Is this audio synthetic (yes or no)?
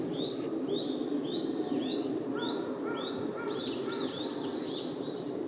no